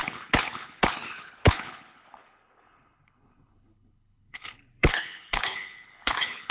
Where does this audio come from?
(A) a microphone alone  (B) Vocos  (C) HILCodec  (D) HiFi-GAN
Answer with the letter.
C